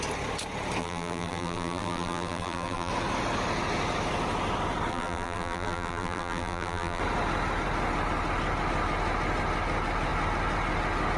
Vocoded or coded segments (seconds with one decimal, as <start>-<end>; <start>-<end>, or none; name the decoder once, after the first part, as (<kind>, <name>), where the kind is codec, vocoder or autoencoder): 0.8-2.9 (vocoder, BigVGAN v2); 4.9-7.0